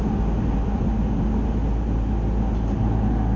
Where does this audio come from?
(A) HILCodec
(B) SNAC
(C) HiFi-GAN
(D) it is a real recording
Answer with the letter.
D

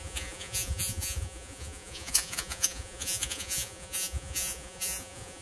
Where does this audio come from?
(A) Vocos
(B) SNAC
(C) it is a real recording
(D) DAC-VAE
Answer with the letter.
A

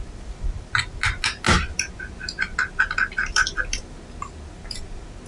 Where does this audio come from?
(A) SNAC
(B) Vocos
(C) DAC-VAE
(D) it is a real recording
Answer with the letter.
D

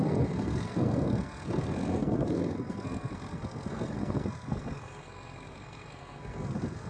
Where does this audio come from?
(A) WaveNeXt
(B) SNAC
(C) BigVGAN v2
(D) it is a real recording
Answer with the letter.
B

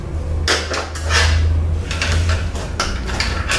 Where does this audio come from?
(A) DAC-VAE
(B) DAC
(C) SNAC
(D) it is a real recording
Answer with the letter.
D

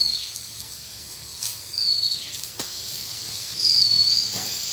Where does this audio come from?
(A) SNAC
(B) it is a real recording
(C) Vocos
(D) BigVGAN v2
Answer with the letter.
A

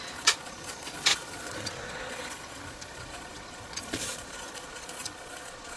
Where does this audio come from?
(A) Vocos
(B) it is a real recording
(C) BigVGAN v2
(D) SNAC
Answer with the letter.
A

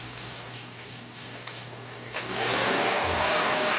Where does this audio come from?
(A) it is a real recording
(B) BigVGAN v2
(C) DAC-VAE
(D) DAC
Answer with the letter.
D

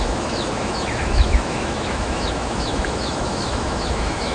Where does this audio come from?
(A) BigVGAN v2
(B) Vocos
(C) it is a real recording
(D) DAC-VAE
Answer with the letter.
D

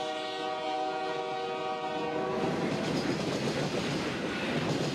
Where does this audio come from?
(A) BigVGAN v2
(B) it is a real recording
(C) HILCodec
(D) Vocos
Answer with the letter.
B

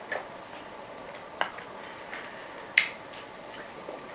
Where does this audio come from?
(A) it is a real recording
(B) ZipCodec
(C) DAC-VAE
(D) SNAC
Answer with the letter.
A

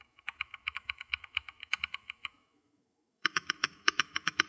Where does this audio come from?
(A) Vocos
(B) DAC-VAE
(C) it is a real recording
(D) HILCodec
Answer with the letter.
B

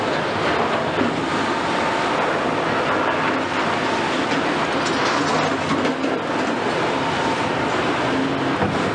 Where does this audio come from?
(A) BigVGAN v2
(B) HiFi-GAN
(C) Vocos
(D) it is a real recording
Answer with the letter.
D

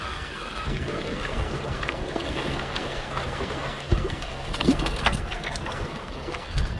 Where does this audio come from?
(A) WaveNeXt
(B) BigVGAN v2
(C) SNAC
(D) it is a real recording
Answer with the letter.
C